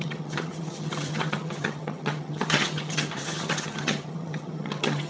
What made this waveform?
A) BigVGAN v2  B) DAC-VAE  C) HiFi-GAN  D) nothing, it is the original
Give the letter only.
C